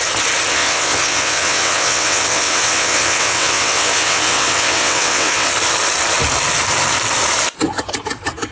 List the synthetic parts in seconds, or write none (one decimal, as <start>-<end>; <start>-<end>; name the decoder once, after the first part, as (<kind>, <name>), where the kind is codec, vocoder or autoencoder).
0.5-5.5 (vocoder, WaveNeXt)